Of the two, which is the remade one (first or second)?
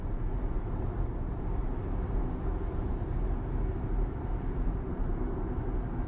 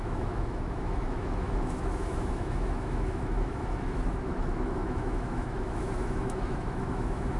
second